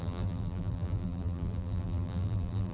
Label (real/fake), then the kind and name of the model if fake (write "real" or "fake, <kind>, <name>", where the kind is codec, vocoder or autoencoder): fake, vocoder, BigVGAN v2